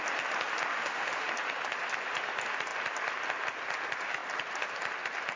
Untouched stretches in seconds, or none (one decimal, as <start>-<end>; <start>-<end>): 0.0-0.7; 1.3-5.4